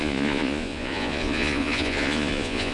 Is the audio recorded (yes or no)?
no